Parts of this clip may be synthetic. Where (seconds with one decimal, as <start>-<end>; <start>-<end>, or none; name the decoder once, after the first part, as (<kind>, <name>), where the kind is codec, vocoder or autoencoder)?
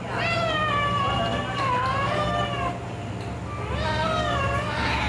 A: none